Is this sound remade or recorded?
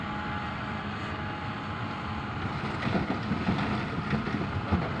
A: recorded